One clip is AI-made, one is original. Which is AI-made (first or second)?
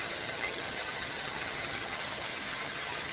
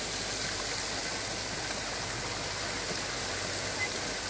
first